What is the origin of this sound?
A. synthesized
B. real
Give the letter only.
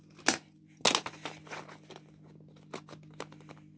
B